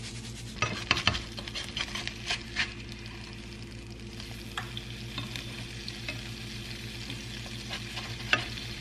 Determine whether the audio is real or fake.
real